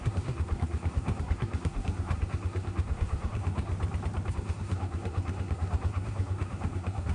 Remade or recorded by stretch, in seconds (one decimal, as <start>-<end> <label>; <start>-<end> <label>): 0.0-3.7 remade; 3.7-4.3 recorded; 4.3-7.1 remade